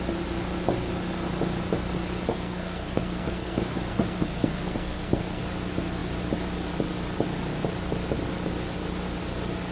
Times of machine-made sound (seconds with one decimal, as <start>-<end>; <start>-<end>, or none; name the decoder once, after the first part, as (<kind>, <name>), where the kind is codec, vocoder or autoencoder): 2.3-5.4 (codec, SNAC)

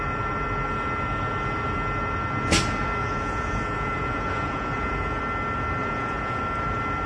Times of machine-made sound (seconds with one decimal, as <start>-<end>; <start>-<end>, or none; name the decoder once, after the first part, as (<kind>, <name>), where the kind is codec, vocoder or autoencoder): 3.0-5.2 (vocoder, Vocos); 5.8-6.4